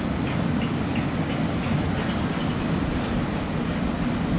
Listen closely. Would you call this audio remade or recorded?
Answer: recorded